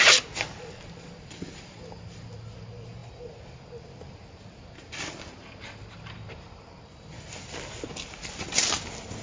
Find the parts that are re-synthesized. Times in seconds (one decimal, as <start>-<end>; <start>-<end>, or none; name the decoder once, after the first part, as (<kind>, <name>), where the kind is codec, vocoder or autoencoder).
none